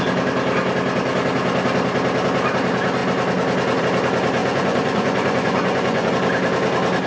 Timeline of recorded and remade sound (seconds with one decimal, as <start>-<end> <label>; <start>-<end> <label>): 0.0-4.4 recorded; 4.4-6.1 remade; 6.1-7.1 recorded